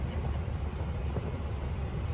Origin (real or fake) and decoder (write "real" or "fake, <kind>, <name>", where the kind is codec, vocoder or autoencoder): real